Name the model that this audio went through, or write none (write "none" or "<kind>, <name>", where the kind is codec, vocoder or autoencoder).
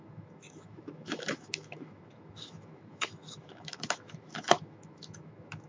autoencoder, DAC-VAE